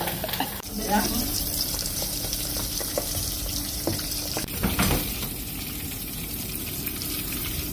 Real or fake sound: fake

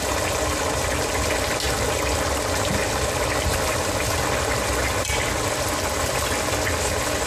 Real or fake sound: real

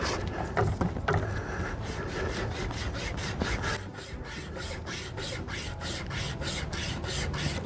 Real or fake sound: real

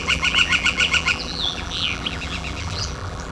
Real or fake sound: fake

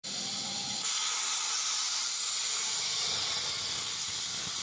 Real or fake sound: real